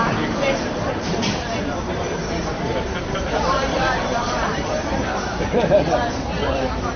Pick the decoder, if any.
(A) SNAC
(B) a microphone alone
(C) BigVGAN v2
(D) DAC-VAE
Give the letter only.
C